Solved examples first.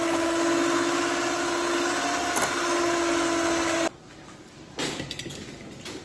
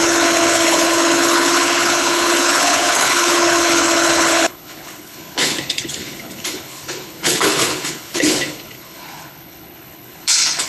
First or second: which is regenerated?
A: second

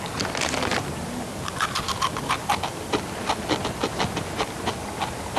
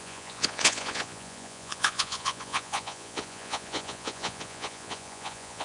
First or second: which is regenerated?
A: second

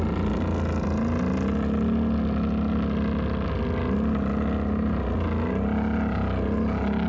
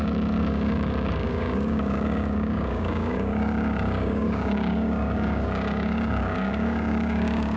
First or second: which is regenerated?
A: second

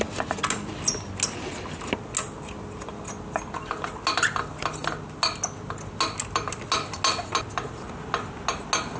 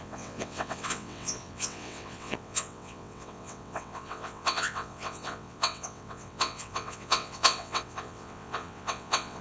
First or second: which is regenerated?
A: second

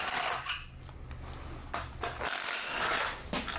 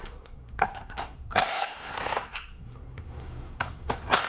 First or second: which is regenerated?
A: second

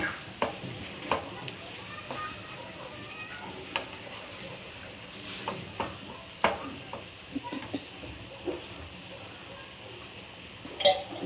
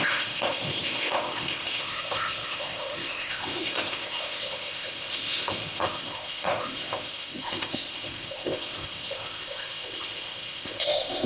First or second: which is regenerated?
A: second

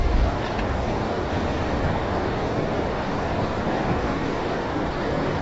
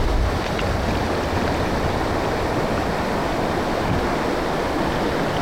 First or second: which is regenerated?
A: first